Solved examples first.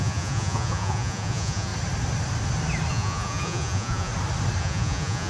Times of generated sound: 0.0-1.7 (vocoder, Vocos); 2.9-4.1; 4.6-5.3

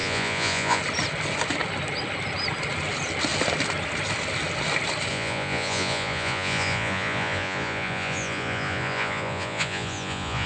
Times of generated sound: 0.0-0.8 (vocoder, Vocos); 5.1-10.5

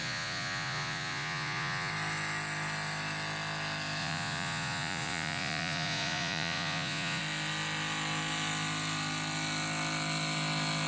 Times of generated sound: 0.0-1.9 (vocoder, Vocos); 4.0-7.2

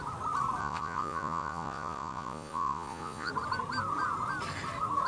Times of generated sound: 0.6-3.3 (vocoder, Vocos)

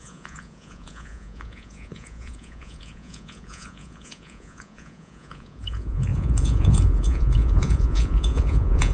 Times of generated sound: 0.0-8.9 (vocoder, Vocos)